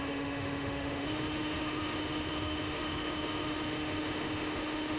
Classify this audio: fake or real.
fake